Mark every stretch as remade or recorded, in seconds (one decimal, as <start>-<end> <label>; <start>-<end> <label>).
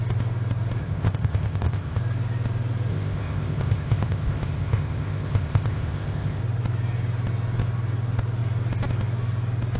0.0-0.8 recorded; 0.8-2.0 remade; 2.0-2.9 recorded; 2.9-6.4 remade; 6.4-9.8 recorded